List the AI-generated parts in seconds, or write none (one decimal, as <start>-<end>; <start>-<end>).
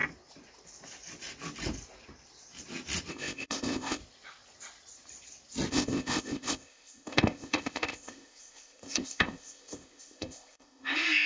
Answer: 3.1-4.0; 5.7-11.3